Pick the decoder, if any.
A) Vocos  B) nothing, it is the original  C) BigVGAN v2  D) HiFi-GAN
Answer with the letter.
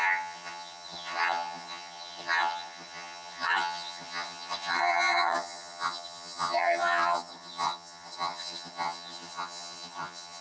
D